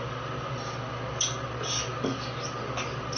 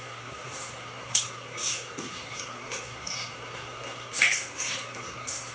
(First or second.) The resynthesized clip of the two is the second